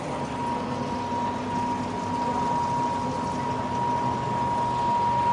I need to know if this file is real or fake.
real